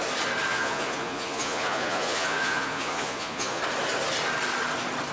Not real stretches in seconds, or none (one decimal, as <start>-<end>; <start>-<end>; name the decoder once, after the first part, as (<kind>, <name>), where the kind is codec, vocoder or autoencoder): 0.5-3.6 (vocoder, Vocos)